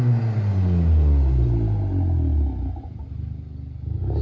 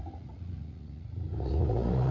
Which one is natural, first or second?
first